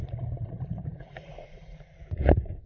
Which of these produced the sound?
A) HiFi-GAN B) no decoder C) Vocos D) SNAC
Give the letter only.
C